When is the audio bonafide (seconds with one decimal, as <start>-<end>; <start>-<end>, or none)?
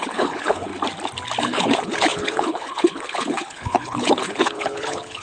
0.7-1.4